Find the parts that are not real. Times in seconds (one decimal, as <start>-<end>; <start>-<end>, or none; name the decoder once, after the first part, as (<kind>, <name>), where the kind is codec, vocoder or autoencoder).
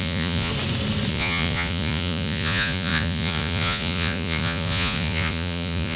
0.0-0.5 (vocoder, Vocos); 1.1-6.0